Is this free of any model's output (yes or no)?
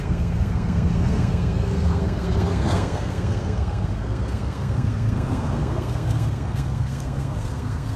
no